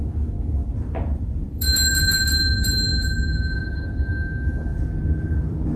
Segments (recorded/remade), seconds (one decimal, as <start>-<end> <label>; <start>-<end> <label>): 0.0-0.6 recorded; 0.6-4.1 remade; 4.1-4.7 recorded; 4.7-5.8 remade